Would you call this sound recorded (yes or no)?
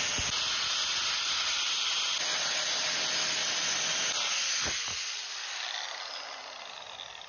yes